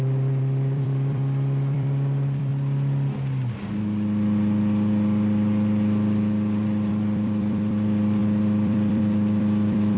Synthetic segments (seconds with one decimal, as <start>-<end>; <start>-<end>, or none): 0.0-2.5; 6.9-10.0